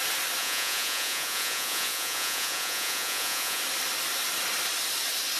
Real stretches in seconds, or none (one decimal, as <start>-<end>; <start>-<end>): 0.0-0.4; 3.6-5.4